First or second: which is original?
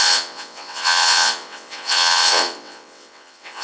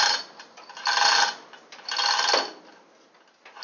second